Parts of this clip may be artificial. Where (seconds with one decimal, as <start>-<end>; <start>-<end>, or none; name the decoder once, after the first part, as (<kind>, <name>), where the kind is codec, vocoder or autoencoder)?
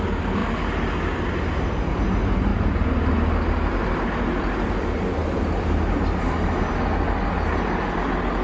none